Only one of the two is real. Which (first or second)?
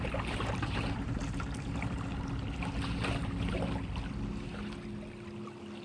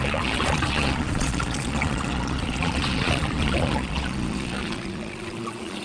first